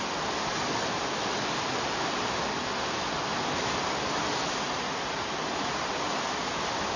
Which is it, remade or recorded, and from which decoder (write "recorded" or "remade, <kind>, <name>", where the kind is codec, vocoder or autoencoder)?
recorded